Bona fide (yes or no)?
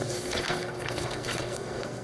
no